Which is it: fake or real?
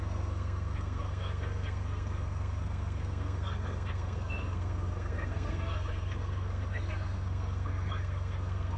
fake